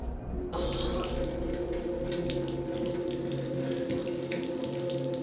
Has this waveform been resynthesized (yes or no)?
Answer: no